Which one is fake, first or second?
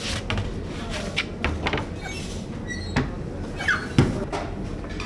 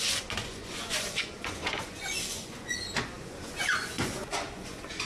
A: second